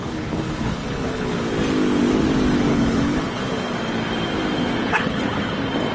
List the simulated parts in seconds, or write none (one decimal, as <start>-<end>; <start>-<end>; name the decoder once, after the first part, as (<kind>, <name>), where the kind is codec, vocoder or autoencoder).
0.0-1.3 (codec, HILCodec); 2.7-3.4; 4.8-5.5